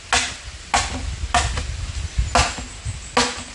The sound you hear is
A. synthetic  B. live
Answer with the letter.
B